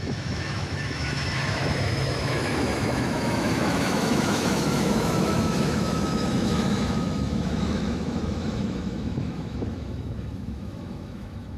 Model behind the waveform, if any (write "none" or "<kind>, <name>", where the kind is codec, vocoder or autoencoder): autoencoder, DAC-VAE